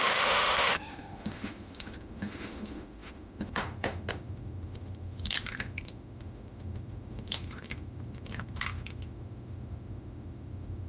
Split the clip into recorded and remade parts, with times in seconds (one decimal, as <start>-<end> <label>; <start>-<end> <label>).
0.0-10.9 remade